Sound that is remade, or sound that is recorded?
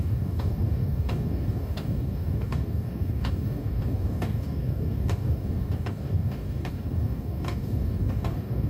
remade